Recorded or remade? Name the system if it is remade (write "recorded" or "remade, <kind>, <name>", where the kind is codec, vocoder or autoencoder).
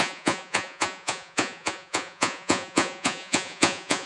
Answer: remade, vocoder, Vocos